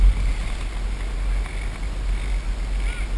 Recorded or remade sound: recorded